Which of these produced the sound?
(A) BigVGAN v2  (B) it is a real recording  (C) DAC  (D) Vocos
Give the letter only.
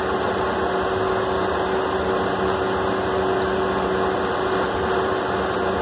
B